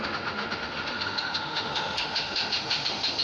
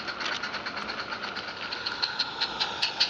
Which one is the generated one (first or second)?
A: first